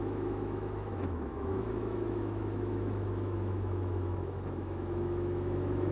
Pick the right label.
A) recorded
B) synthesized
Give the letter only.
B